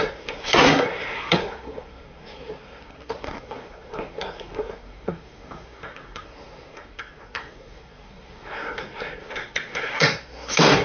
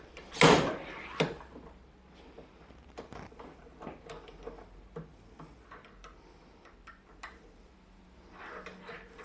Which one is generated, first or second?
first